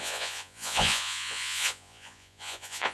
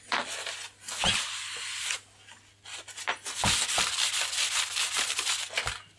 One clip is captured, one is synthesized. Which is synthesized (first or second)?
first